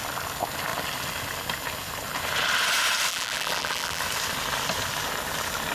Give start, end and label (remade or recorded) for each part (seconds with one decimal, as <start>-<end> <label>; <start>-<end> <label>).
0.0-3.1 recorded; 3.1-4.0 remade; 4.0-5.7 recorded